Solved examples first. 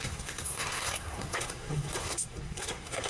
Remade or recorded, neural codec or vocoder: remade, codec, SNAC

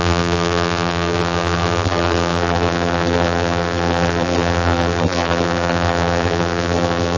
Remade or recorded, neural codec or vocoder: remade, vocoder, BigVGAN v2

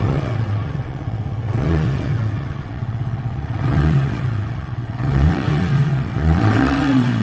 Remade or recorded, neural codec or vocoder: remade, vocoder, WaveNeXt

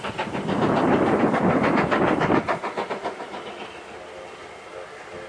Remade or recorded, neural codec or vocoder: recorded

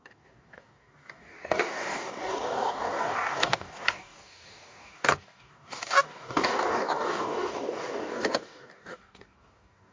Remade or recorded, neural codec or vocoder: remade, codec, DAC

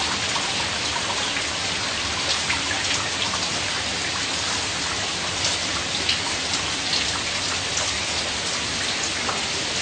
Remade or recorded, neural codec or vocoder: recorded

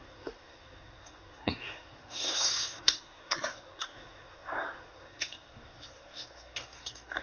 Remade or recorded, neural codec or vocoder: remade, codec, SNAC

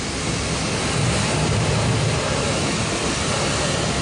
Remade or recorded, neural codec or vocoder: recorded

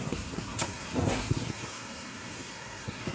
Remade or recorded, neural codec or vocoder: remade, codec, SNAC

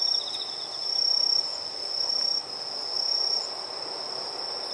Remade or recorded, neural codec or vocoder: recorded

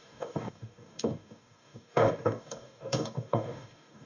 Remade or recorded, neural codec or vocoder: remade, codec, DAC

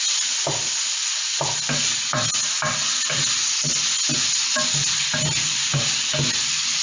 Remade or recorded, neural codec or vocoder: recorded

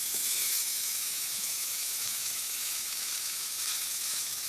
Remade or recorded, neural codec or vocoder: remade, autoencoder, DAC-VAE